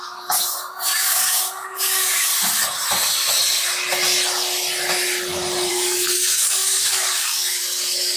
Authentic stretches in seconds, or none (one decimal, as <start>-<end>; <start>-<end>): 2.3-5.7